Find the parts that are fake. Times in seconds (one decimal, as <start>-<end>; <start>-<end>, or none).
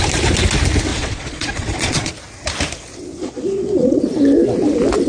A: 0.9-2.1; 3.2-4.0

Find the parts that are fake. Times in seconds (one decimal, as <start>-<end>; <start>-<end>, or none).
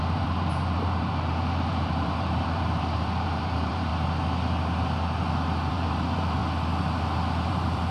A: 0.0-3.9; 5.7-6.4; 7.5-7.9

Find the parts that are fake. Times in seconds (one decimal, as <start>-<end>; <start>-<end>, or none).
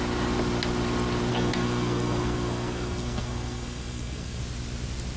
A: 1.3-4.4